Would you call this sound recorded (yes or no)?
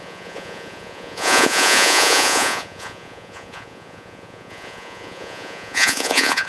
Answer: no